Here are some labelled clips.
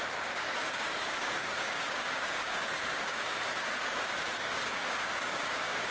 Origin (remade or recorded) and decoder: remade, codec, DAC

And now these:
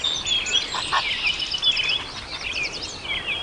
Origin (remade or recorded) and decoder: recorded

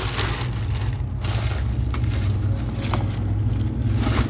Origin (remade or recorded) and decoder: recorded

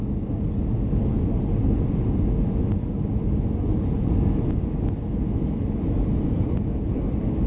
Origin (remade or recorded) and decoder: recorded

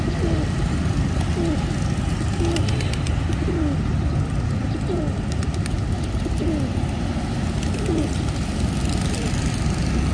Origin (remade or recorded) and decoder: recorded